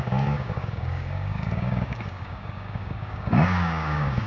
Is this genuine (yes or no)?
no